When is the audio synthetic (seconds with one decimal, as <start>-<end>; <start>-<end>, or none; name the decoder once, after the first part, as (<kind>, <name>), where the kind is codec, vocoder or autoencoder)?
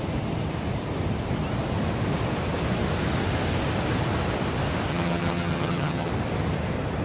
4.9-6.1 (vocoder, HiFi-GAN)